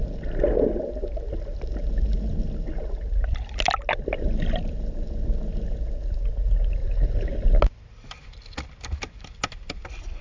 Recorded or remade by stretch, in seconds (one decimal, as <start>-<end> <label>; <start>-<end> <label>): 0.0-10.2 recorded